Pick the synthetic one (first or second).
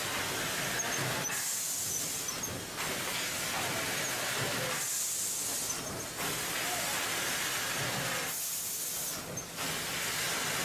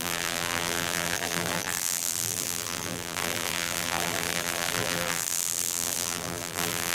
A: second